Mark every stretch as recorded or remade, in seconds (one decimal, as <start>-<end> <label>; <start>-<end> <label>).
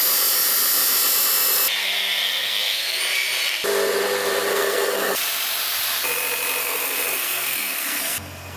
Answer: 0.0-1.8 recorded; 1.8-3.0 remade; 3.0-4.5 recorded; 4.5-5.2 remade; 5.2-6.6 recorded; 6.6-8.6 remade